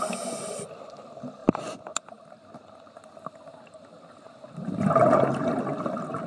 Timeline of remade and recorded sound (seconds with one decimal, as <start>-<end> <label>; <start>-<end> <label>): 0.0-6.3 recorded